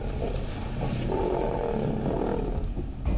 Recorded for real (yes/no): yes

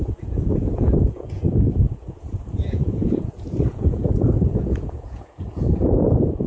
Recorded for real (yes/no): no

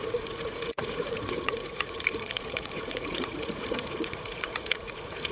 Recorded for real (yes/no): no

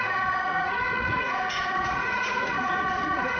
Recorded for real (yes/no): no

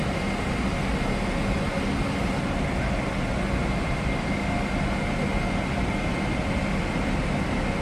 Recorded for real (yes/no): yes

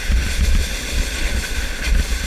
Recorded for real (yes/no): yes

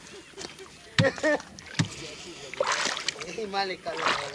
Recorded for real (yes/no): yes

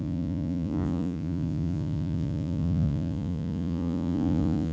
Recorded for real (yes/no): no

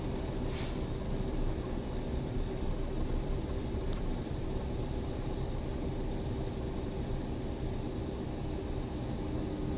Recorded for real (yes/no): yes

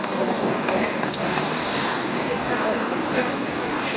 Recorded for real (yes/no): no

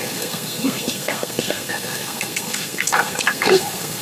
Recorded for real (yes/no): no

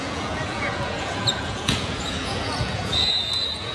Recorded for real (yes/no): no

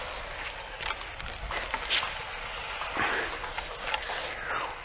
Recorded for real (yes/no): yes